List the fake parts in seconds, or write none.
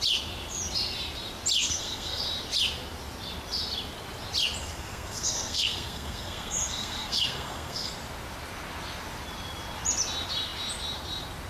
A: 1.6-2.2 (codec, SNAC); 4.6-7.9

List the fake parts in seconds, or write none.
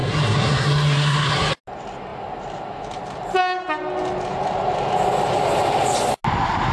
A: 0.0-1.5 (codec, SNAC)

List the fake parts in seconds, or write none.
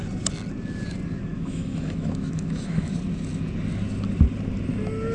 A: 1.3-2.9 (autoencoder, DAC-VAE)